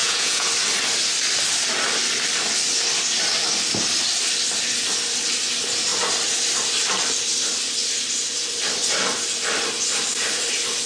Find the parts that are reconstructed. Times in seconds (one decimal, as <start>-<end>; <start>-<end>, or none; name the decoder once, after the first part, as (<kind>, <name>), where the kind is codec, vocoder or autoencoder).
0.0-0.5 (vocoder, Vocos)